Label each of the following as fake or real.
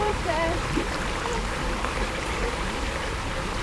fake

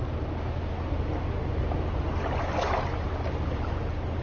real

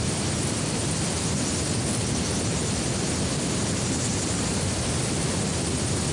real